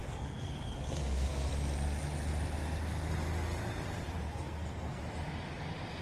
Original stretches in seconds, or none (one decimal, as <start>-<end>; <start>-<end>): 1.5-4.3; 5.0-6.0